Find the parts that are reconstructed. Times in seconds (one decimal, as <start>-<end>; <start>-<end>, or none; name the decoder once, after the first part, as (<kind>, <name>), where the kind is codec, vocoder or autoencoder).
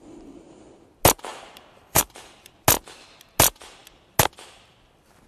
1.3-2.5 (vocoder, BigVGAN v2)